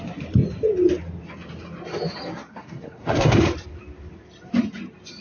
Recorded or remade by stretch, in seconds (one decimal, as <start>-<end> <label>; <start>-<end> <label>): 0.0-2.5 recorded; 2.5-3.4 remade; 3.4-5.2 recorded